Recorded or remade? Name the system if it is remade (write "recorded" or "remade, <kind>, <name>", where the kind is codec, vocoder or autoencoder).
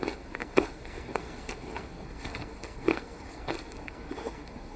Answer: remade, codec, SNAC